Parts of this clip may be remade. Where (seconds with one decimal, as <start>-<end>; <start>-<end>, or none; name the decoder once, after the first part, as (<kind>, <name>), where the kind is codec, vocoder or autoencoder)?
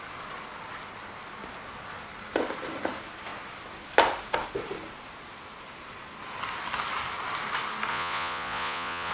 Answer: 7.9-9.1 (vocoder, Vocos)